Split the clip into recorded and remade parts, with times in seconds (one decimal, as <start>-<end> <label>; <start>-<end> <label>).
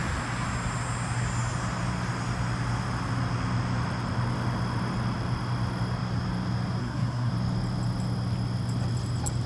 0.0-6.8 recorded; 6.8-7.3 remade; 7.3-9.5 recorded